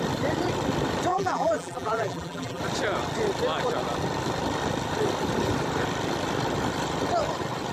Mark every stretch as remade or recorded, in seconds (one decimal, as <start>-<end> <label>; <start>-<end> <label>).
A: 0.0-1.1 recorded; 1.1-2.6 remade; 2.6-7.7 recorded